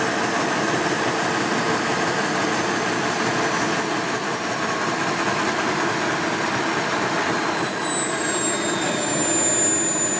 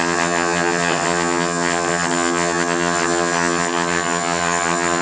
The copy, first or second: second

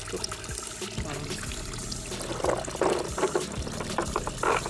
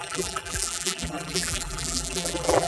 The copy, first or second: second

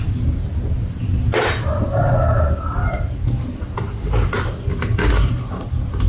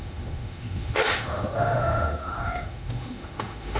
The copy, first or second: second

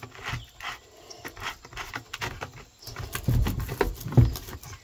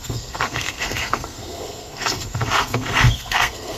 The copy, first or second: second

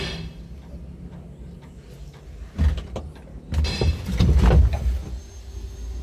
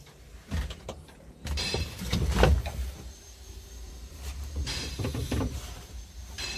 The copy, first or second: second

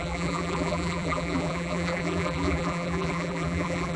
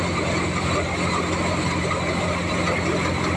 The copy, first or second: first